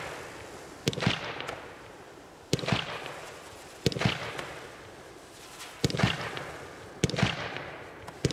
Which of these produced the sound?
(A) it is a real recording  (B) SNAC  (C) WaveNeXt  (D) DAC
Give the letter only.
A